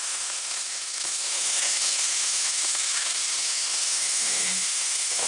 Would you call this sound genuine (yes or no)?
no